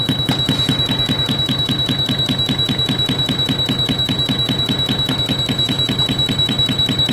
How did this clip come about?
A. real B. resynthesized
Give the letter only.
A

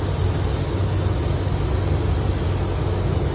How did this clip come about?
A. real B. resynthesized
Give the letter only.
A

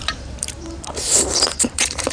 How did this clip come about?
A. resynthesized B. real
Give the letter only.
A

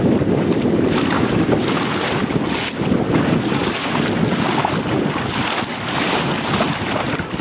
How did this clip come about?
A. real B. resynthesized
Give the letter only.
B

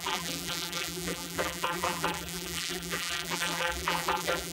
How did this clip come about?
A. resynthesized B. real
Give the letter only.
A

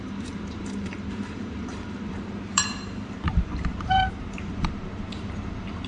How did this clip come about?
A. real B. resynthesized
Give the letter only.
B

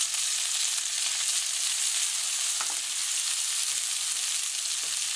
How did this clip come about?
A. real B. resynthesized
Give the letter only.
A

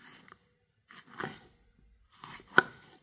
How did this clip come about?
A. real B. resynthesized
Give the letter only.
A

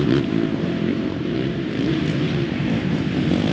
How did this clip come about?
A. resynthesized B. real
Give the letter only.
A